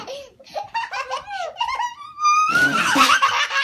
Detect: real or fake real